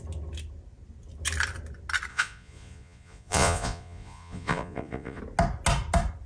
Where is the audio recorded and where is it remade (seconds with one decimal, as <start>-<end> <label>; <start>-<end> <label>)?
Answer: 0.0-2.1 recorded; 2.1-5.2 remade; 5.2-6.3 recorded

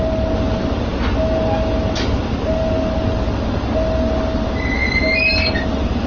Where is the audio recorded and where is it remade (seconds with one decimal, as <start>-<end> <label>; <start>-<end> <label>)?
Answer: 0.0-6.1 recorded

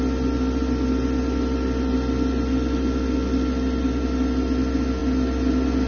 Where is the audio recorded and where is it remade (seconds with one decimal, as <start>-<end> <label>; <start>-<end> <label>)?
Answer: 0.0-5.9 recorded

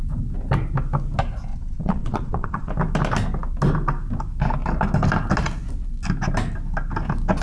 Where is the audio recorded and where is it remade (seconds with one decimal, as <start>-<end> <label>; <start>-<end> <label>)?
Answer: 0.0-1.5 recorded; 1.5-2.7 remade; 2.7-7.4 recorded